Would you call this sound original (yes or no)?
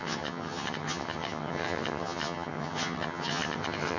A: no